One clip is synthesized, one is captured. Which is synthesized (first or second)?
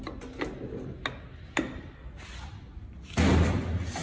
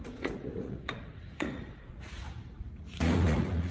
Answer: second